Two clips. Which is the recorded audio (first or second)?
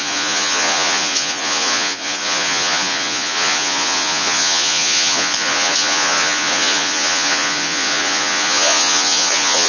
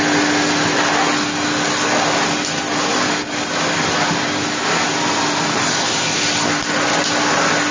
second